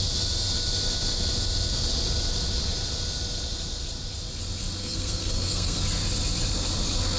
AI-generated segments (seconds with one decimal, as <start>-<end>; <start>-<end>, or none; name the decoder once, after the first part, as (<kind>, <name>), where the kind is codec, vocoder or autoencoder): 4.8-5.8 (codec, SNAC)